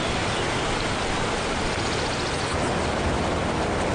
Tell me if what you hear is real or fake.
real